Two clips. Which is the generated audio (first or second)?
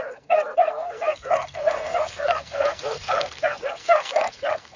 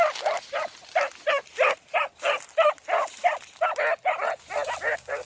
first